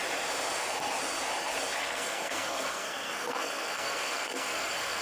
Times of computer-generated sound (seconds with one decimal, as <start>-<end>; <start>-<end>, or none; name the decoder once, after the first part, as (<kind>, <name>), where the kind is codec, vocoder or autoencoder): 1.8-5.0 (codec, SNAC)